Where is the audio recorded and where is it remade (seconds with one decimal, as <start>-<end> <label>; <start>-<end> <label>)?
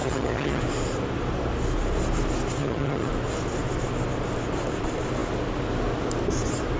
0.0-0.6 remade; 0.6-2.6 recorded; 2.6-3.1 remade; 3.1-6.8 recorded